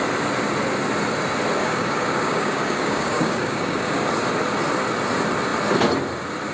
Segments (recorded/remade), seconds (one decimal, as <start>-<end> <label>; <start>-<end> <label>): 0.0-1.6 recorded; 1.6-4.1 remade; 4.1-6.5 recorded